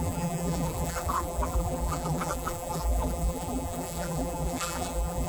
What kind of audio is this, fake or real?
fake